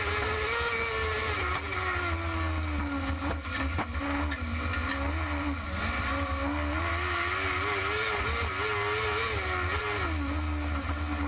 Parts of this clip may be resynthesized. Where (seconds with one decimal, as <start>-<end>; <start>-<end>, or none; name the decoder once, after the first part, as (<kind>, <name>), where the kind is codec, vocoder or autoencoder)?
none